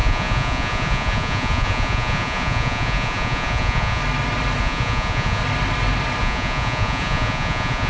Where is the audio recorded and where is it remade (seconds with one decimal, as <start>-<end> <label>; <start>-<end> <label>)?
0.0-4.0 remade; 4.0-4.6 recorded; 4.6-5.4 remade; 5.4-6.2 recorded; 6.2-7.9 remade